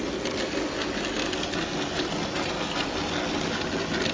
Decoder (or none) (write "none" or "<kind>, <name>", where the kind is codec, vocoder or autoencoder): none